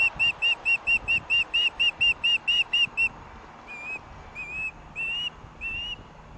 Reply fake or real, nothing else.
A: real